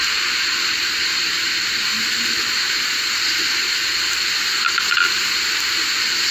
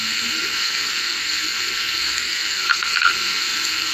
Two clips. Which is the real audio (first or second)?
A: first